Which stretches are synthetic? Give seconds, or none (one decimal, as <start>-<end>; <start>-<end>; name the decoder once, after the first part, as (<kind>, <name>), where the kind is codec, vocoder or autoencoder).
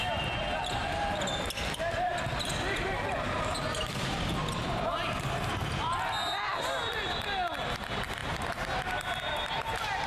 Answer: 0.8-4.7 (vocoder, BigVGAN v2)